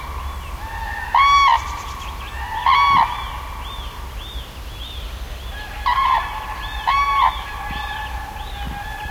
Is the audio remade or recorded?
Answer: recorded